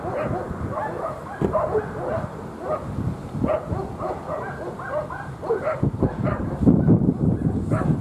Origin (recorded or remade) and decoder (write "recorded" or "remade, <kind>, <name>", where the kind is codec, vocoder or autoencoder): recorded